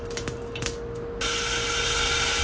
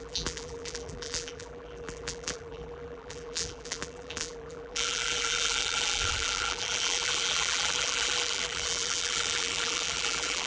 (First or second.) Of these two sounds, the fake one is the second